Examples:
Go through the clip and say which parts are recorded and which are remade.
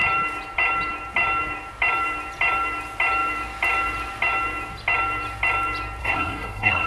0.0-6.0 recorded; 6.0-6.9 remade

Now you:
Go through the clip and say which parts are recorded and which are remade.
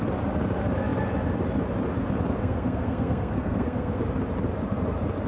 0.0-2.4 recorded; 2.4-4.0 remade; 4.0-5.3 recorded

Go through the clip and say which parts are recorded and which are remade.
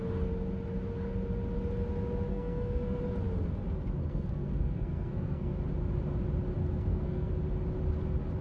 0.0-2.3 recorded; 2.3-3.0 remade; 3.0-4.0 recorded; 4.0-5.6 remade; 5.6-6.6 recorded; 6.6-7.3 remade; 7.3-8.4 recorded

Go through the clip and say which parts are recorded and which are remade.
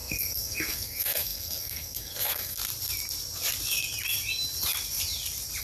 0.0-2.6 remade; 2.6-5.6 recorded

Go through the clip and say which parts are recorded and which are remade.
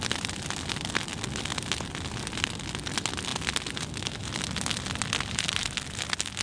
0.0-6.4 recorded